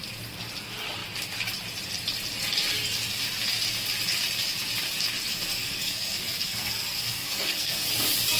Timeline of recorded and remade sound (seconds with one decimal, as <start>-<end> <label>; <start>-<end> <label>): 0.0-5.3 recorded; 5.3-7.9 remade; 7.9-8.4 recorded